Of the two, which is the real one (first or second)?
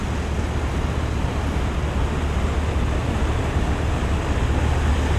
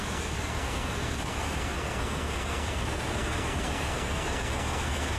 first